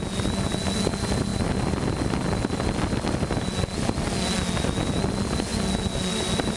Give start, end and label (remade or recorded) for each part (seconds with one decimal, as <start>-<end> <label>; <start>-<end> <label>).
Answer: 0.0-6.6 recorded